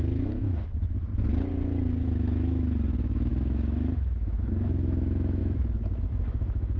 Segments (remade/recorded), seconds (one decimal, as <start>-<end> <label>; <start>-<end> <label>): 0.0-1.1 remade; 1.1-2.0 recorded; 2.0-6.8 remade